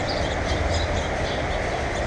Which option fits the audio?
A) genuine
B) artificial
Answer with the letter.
A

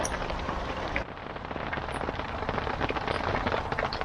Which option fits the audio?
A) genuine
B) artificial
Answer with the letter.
A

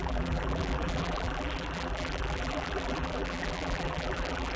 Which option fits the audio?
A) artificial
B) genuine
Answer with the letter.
A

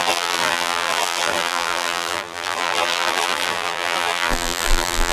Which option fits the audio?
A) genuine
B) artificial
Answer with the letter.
B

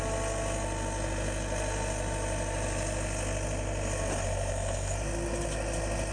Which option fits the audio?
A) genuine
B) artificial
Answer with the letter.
A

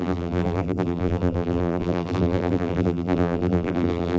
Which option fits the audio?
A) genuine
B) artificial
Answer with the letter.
B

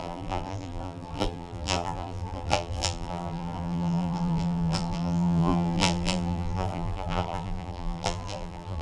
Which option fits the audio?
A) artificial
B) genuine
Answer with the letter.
A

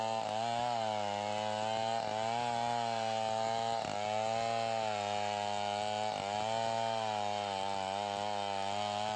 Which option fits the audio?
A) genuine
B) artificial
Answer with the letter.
A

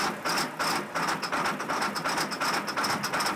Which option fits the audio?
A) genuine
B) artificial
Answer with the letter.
A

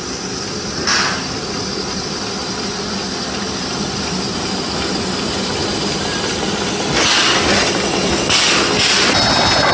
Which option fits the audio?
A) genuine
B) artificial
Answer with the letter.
A